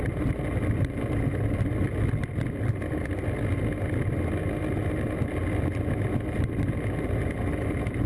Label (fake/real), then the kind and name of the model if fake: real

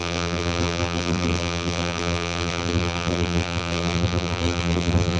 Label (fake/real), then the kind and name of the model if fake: fake, vocoder, BigVGAN v2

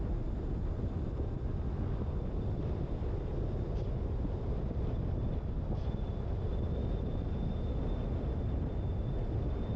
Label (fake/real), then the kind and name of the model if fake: real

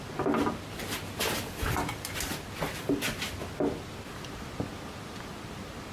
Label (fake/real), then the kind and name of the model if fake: real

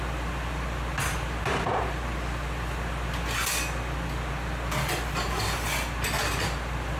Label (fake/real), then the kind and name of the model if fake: real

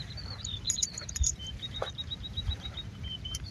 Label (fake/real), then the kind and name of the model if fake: fake, vocoder, BigVGAN v2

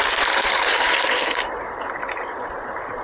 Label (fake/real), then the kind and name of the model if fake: fake, vocoder, BigVGAN v2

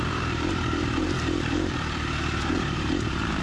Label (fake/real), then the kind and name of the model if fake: fake, vocoder, BigVGAN v2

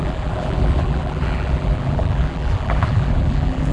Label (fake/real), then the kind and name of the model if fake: fake, vocoder, BigVGAN v2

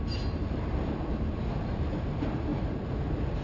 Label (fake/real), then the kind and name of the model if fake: fake, vocoder, BigVGAN v2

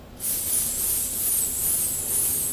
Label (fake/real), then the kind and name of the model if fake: real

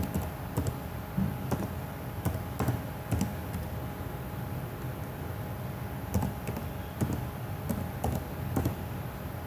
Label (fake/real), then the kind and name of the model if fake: real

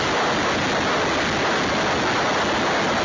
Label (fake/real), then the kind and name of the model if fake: real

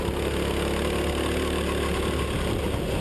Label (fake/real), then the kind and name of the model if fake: real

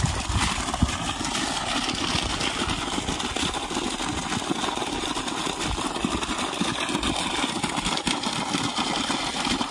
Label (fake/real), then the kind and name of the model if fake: real